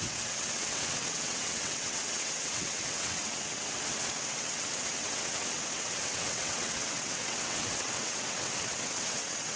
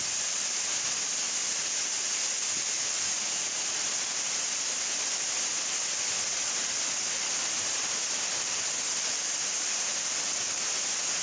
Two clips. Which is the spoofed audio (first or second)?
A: first